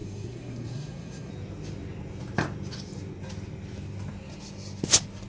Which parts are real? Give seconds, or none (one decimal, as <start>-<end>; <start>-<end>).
1.3-5.3